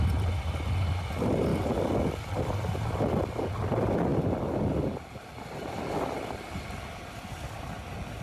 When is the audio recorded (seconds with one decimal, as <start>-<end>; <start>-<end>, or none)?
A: 0.0-8.2

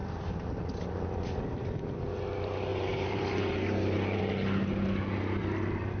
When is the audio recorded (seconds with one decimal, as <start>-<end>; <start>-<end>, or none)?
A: 0.0-2.7; 4.2-6.0

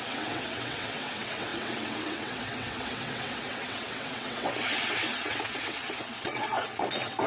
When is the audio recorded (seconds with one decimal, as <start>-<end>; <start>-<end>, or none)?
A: none

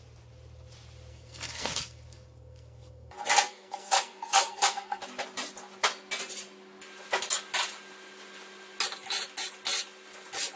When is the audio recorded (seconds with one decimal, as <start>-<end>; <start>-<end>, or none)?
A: 0.0-1.1; 5.0-10.6

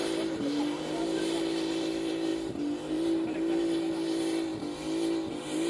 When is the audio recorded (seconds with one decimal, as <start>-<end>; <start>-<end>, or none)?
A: 4.5-5.3